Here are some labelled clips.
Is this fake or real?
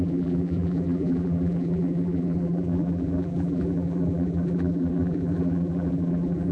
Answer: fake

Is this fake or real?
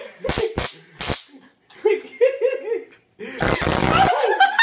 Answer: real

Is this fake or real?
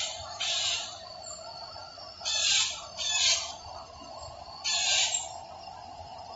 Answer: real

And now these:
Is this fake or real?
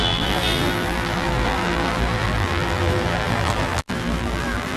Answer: fake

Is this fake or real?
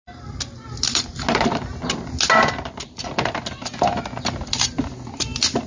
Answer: real